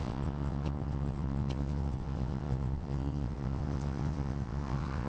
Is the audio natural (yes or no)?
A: no